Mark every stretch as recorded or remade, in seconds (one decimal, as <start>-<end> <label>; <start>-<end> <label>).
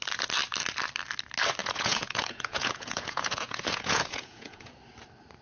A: 0.0-1.6 recorded; 1.6-4.7 remade; 4.7-5.4 recorded